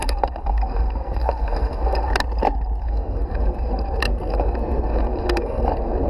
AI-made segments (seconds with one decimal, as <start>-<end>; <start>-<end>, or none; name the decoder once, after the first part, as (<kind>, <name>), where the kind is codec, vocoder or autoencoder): 0.0-2.1 (codec, SNAC); 2.8-6.1